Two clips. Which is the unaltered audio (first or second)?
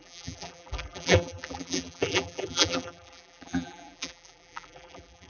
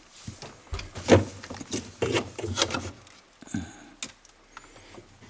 second